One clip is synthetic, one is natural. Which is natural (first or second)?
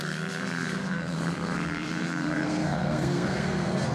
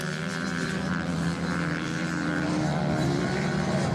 second